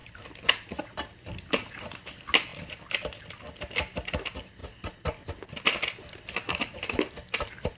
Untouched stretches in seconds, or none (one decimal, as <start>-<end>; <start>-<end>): 0.0-2.5; 3.2-7.8